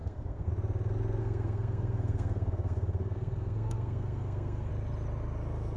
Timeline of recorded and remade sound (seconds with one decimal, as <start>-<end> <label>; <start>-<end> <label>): 0.0-0.5 remade; 0.5-1.2 recorded; 1.2-4.7 remade; 4.7-5.8 recorded